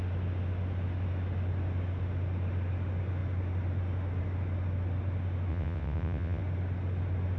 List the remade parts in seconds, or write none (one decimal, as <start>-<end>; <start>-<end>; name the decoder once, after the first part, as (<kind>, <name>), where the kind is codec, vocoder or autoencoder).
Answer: 5.5-6.4 (vocoder, WaveNeXt)